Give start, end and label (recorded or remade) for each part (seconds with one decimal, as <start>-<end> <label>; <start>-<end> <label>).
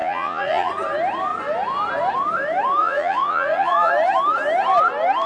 0.0-0.7 remade; 0.7-2.8 recorded; 2.8-3.9 remade; 3.9-5.3 recorded